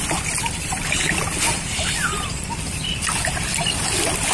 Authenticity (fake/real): real